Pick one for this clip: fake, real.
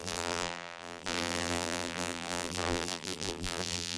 fake